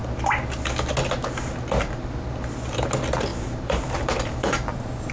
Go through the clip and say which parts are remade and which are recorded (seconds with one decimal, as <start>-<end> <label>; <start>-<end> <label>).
0.0-3.3 recorded; 3.3-5.1 remade